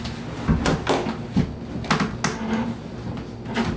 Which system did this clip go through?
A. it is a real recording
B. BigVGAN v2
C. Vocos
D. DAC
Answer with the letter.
A